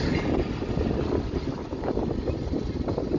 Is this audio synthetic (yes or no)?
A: no